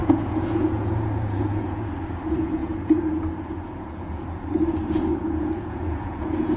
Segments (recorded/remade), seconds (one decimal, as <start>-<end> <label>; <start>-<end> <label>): 0.0-6.6 remade